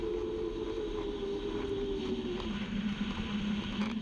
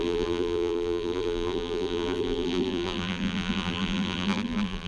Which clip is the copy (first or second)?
second